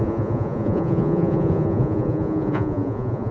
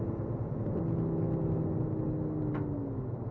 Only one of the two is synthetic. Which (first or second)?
first